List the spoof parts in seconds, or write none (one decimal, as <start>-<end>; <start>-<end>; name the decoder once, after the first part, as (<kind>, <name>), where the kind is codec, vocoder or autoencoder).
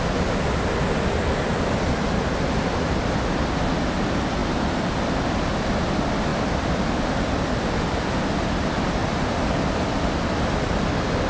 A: none